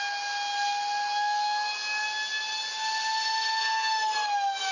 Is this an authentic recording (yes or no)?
yes